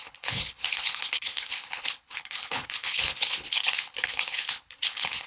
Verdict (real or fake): fake